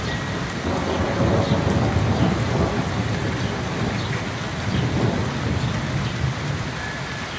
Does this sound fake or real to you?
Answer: real